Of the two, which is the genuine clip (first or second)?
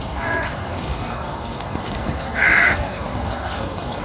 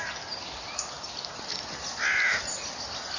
second